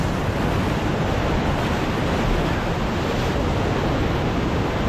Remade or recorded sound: recorded